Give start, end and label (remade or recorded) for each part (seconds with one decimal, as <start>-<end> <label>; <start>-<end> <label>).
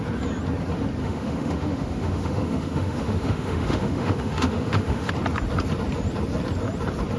0.0-1.0 recorded; 1.0-5.1 remade; 5.1-7.2 recorded